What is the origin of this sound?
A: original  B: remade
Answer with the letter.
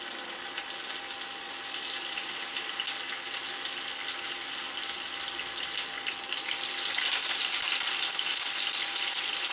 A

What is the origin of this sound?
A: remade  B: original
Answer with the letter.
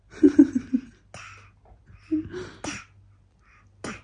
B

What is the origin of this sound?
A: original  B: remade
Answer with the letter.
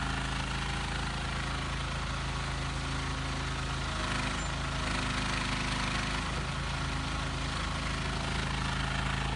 A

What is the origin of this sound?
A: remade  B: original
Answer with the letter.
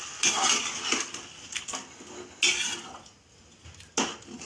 B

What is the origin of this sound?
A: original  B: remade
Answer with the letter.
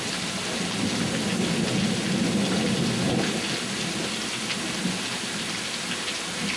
A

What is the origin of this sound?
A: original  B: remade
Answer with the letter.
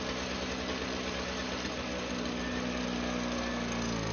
A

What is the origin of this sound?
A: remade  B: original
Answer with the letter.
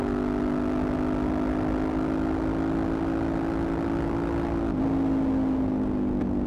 B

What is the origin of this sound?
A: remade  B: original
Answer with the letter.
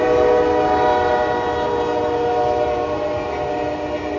B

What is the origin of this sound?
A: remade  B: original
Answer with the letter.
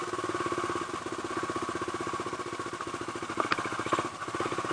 B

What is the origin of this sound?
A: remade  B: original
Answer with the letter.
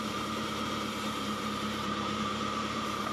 A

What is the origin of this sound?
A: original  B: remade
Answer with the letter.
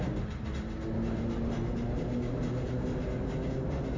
A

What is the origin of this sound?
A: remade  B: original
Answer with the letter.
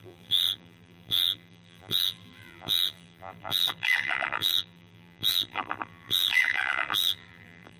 A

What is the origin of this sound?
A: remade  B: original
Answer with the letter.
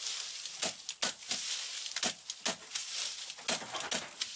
B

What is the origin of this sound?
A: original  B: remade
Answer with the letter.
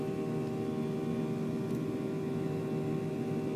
A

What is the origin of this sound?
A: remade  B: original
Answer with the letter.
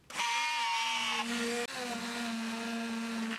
B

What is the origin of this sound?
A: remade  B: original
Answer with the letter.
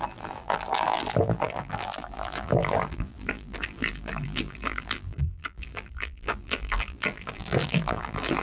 A